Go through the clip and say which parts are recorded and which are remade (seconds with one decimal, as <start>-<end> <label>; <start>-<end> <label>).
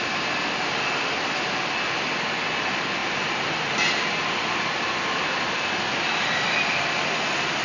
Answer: 0.0-3.0 recorded; 3.0-6.8 remade; 6.8-7.6 recorded